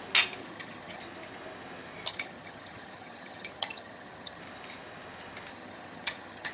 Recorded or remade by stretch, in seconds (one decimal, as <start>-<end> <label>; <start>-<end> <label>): 0.0-0.4 recorded; 0.4-1.0 remade; 1.0-2.1 recorded; 2.1-4.4 remade; 4.4-5.5 recorded; 5.5-6.5 remade